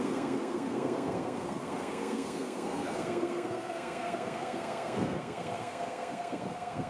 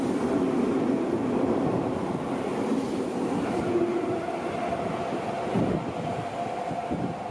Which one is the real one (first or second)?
second